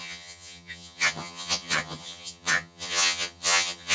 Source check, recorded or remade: remade